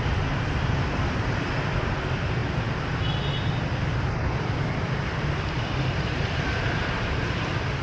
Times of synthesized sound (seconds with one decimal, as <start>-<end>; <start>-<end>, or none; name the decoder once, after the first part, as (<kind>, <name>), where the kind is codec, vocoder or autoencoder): 0.0-2.4 (vocoder, BigVGAN v2); 3.8-7.8